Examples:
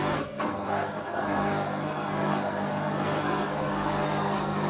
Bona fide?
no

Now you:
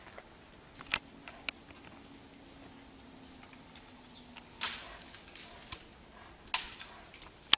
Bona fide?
yes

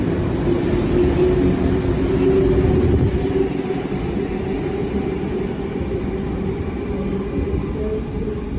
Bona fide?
yes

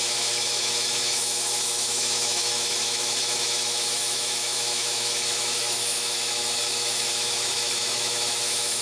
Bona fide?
no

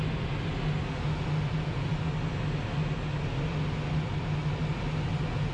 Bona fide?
yes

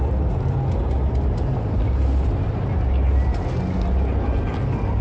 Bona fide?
yes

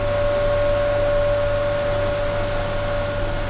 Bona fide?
yes